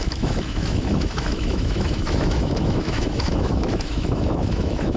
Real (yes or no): no